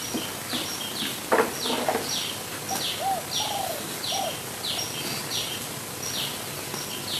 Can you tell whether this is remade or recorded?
recorded